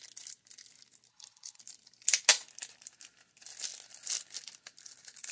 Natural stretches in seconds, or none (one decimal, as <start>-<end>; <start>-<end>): 0.0-1.1; 1.6-5.3